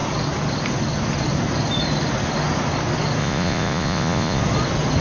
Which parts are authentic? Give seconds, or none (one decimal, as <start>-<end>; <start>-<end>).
0.0-3.2; 4.4-5.0

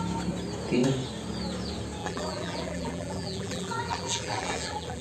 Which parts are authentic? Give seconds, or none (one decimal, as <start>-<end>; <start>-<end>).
0.0-2.0

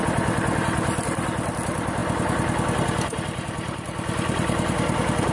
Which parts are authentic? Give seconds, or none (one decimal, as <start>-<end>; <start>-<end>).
0.0-5.3